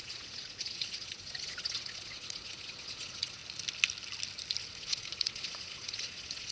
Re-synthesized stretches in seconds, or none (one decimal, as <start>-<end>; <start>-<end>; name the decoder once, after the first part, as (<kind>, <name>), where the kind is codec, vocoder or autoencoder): 0.0-3.4 (vocoder, Vocos); 4.6-6.5